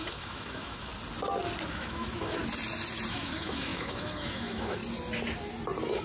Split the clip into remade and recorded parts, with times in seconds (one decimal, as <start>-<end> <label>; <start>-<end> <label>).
0.0-0.9 remade; 0.9-1.7 recorded; 1.7-2.4 remade; 2.4-3.1 recorded; 3.1-4.8 remade; 4.8-6.0 recorded